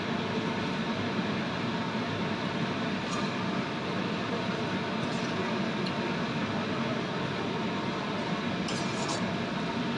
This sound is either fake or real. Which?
real